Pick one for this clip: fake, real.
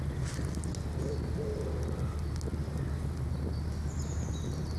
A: real